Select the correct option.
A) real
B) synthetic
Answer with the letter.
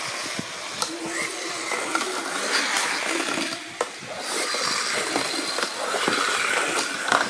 A